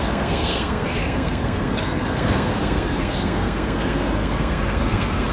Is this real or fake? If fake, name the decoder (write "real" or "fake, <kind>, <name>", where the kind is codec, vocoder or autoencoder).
fake, codec, SNAC